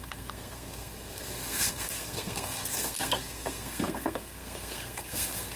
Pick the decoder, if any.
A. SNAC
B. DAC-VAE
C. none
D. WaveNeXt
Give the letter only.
A